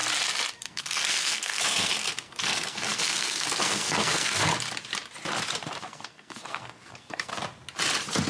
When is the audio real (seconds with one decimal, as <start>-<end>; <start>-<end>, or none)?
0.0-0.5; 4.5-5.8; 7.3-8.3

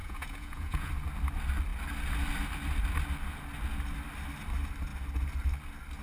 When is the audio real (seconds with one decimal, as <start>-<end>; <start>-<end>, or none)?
0.9-6.0

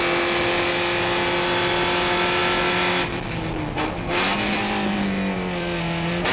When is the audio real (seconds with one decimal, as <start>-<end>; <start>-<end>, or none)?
0.0-6.3

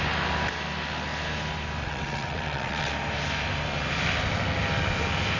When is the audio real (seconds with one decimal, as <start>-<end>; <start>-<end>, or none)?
0.0-1.8; 2.9-5.4